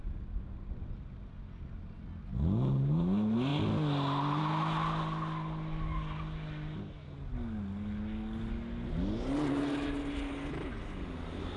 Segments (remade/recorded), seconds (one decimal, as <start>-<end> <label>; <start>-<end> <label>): 0.0-11.6 recorded

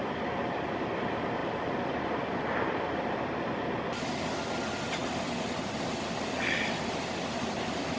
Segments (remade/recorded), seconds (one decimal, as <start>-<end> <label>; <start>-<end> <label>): 0.0-8.0 recorded

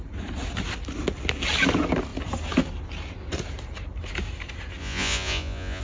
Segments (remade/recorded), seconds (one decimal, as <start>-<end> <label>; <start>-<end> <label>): 0.0-4.8 recorded; 4.8-5.8 remade

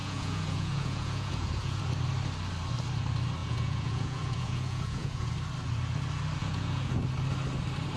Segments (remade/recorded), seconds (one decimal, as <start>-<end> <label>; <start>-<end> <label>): 0.0-1.8 remade; 1.8-3.4 recorded; 3.4-5.3 remade; 5.3-6.4 recorded; 6.4-7.0 remade; 7.0-8.0 recorded

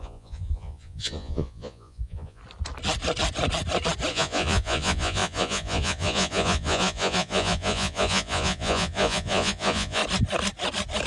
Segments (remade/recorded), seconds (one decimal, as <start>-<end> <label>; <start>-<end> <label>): 0.0-2.4 remade; 2.4-4.1 recorded; 4.1-10.0 remade; 10.0-11.1 recorded

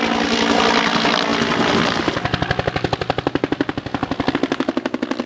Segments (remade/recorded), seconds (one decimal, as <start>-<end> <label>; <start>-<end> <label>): 0.0-5.3 recorded

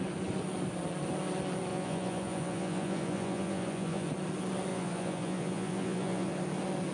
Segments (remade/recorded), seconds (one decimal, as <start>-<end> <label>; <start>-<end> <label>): 0.0-1.7 recorded; 1.7-4.1 remade; 4.1-4.7 recorded; 4.7-6.3 remade; 6.3-6.9 recorded

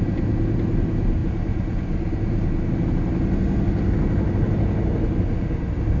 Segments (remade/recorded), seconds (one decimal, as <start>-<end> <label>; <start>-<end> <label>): 0.0-6.0 recorded